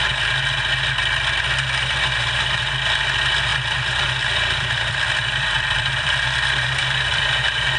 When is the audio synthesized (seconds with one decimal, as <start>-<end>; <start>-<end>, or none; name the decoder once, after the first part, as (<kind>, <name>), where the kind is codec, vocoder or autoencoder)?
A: 3.5-7.3 (vocoder, BigVGAN v2)